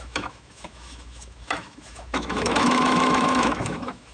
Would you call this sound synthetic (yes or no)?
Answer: yes